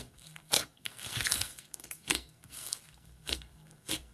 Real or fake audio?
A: fake